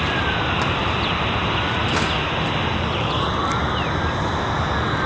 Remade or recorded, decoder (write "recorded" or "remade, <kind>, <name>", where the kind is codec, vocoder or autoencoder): recorded